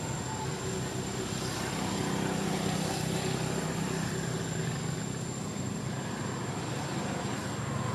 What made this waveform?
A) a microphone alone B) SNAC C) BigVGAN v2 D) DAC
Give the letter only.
A